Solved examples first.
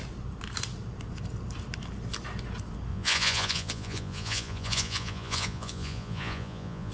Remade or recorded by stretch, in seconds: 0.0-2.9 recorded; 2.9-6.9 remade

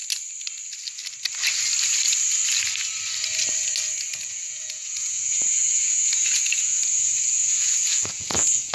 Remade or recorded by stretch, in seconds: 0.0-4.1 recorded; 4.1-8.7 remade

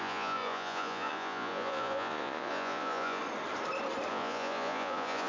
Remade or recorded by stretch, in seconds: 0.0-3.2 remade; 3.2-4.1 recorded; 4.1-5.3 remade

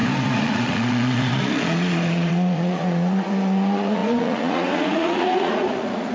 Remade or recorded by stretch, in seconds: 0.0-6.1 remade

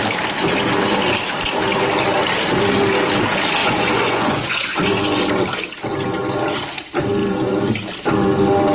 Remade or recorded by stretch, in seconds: 0.0-3.6 recorded; 3.6-5.3 remade; 5.3-8.7 recorded

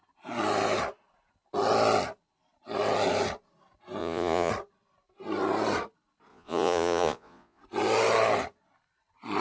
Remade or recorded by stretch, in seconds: 0.0-4.0 recorded; 4.0-4.5 remade; 4.5-6.3 recorded; 6.3-7.6 remade; 7.6-9.4 recorded

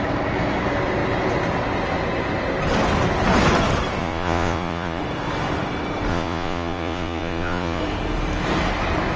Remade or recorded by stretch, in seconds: 0.0-4.0 recorded; 4.0-5.0 remade; 5.0-6.1 recorded; 6.1-7.8 remade; 7.8-9.2 recorded